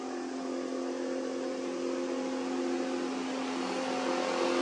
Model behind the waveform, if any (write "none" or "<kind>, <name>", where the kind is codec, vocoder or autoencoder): none